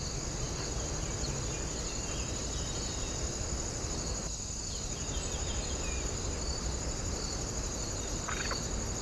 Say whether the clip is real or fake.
real